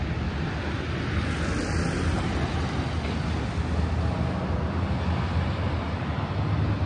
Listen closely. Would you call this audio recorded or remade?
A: recorded